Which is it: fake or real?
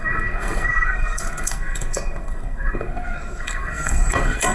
fake